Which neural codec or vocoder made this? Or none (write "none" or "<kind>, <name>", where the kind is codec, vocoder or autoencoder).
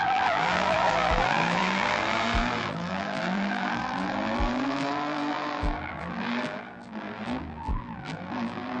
vocoder, BigVGAN v2